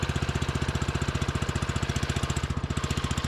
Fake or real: real